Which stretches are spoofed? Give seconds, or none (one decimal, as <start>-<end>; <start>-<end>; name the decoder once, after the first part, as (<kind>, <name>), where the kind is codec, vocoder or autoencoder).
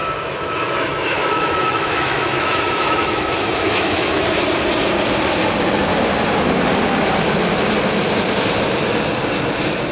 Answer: 0.0-4.3 (autoencoder, DAC-VAE)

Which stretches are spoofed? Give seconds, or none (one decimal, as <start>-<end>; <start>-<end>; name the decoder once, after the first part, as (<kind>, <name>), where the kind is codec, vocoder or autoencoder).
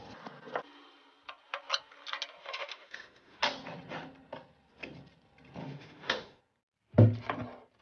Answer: 2.4-3.4 (autoencoder, DAC-VAE); 5.6-6.4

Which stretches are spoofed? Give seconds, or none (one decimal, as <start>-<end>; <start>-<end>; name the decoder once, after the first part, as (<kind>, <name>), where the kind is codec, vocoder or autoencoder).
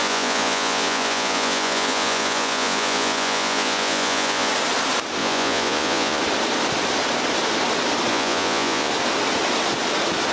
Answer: 0.0-4.5 (vocoder, Vocos); 5.2-6.2; 8.1-8.9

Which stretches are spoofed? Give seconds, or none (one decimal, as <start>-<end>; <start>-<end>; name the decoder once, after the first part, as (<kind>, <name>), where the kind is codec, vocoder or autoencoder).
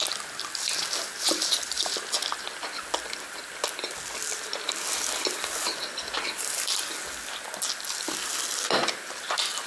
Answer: none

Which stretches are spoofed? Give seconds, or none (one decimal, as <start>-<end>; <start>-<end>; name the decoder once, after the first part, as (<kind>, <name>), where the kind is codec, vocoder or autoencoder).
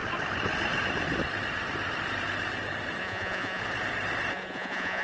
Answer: 3.0-3.6 (vocoder, Vocos); 4.3-5.0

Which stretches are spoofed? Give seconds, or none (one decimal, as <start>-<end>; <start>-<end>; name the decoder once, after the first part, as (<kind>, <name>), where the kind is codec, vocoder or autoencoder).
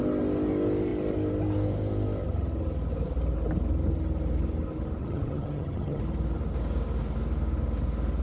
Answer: 5.0-6.0 (vocoder, HiFi-GAN)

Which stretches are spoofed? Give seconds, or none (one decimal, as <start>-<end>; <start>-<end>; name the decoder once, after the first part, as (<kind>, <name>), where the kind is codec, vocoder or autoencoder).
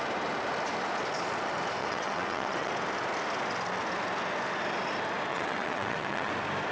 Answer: 1.8-2.7 (vocoder, WaveNeXt); 5.3-6.3